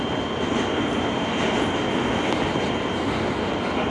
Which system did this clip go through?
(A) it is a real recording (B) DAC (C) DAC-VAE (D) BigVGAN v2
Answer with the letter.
A